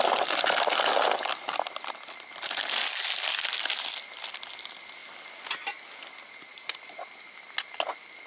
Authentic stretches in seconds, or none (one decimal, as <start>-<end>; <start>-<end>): 0.0-8.3